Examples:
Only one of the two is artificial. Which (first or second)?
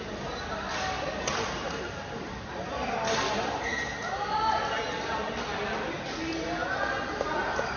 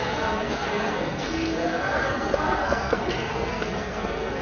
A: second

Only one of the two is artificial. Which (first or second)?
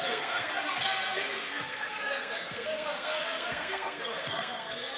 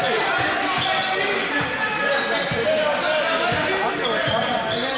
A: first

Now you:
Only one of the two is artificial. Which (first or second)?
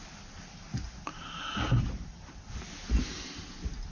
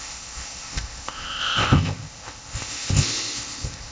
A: second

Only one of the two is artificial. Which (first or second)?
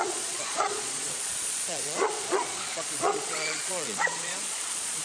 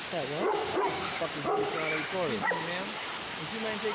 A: first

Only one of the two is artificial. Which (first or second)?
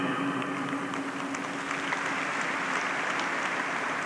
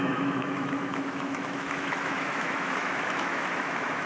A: second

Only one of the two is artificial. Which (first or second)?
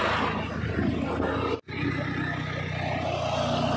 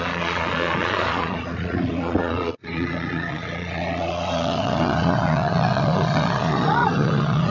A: second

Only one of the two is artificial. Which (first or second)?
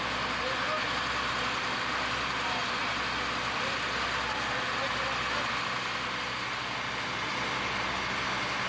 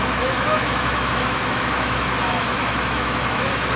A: second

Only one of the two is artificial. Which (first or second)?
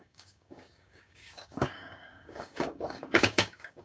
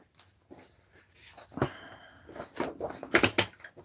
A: first